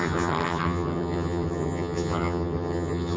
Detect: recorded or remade remade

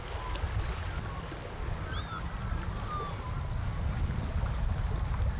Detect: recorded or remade recorded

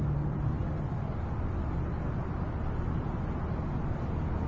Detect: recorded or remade recorded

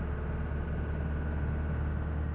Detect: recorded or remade recorded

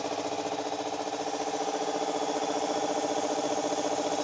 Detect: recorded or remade recorded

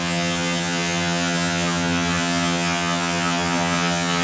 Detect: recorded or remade remade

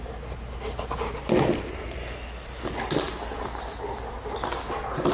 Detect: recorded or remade recorded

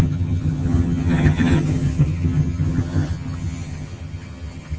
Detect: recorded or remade remade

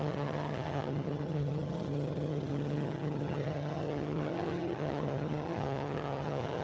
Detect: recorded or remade remade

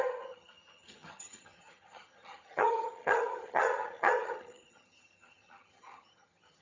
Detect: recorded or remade remade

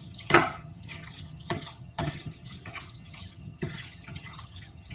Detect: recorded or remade remade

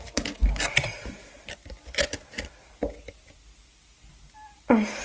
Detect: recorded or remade recorded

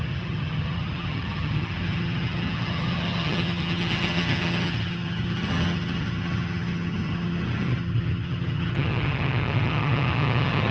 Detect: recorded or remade remade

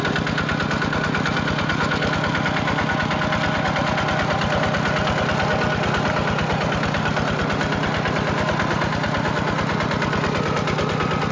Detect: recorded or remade recorded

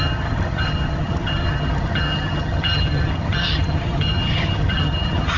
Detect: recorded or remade remade